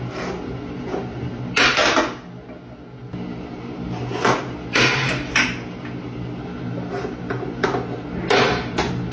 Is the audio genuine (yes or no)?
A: yes